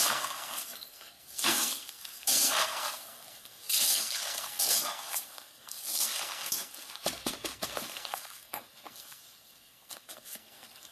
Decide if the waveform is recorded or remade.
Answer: remade